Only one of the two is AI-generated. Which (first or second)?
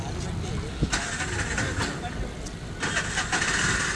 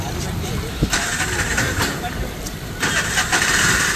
second